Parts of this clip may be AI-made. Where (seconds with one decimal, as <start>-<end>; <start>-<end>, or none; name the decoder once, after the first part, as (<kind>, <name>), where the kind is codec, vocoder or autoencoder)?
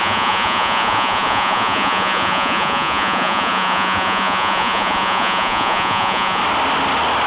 0.0-6.4 (vocoder, Vocos)